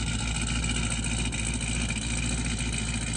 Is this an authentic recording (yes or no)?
yes